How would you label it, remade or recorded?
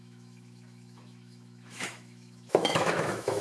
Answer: remade